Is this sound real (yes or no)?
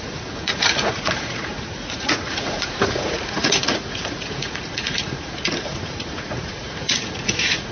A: no